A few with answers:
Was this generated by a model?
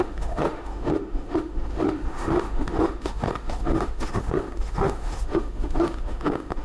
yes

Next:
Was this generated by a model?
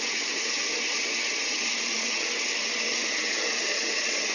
yes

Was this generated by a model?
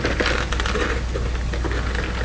no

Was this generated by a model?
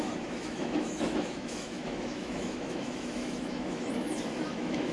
yes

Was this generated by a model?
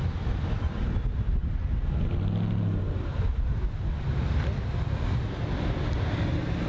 no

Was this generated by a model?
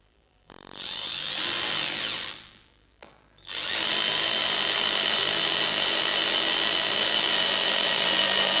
yes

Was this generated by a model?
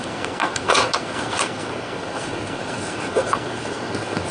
yes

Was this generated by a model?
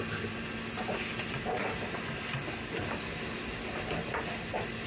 no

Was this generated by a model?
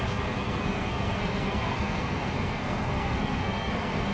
yes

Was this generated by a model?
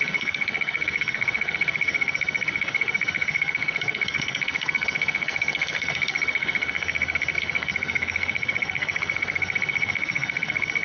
yes